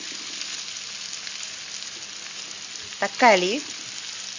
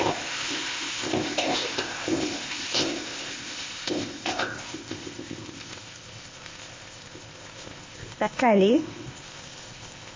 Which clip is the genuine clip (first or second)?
first